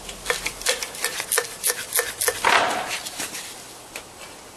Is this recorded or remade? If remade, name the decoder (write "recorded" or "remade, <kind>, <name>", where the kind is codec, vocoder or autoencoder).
recorded